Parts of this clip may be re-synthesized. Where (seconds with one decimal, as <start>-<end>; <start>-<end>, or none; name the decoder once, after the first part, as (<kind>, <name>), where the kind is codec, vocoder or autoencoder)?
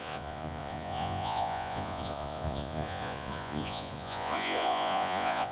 0.0-5.5 (vocoder, Vocos)